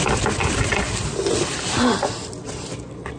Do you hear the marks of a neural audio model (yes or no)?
no